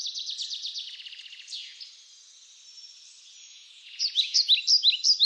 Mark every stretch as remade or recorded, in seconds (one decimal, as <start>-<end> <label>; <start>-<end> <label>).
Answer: 0.0-3.5 recorded; 3.5-4.4 remade; 4.4-5.2 recorded